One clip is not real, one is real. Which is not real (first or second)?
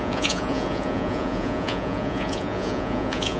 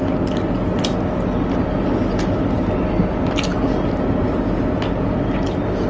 first